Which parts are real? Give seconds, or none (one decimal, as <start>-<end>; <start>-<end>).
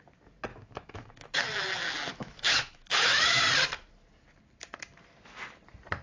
0.0-0.5; 1.4-2.1; 3.4-6.0